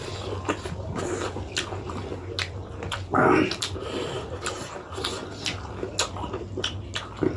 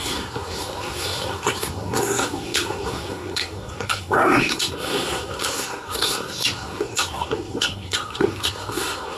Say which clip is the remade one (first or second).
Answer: second